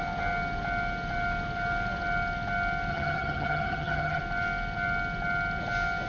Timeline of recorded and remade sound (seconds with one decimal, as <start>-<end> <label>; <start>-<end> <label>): 0.0-2.9 recorded; 2.9-4.2 remade; 4.2-6.1 recorded